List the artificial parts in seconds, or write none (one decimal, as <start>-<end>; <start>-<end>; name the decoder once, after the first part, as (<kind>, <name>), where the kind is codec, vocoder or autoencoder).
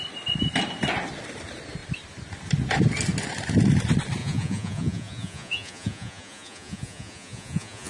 4.2-7.9 (vocoder, Vocos)